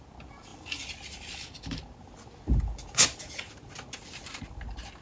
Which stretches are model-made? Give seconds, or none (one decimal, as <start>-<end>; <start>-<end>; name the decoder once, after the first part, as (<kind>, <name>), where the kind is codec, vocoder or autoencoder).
none